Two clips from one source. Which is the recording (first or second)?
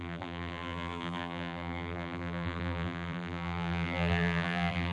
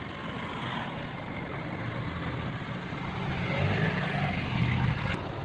second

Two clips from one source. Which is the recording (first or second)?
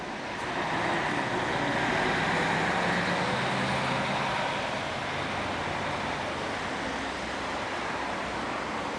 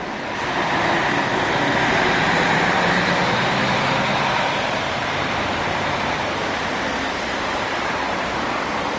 first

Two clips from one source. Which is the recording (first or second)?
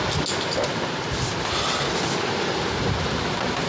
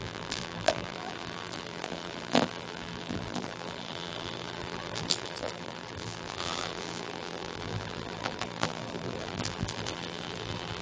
first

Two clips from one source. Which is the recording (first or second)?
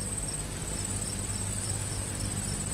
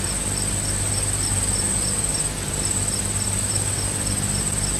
second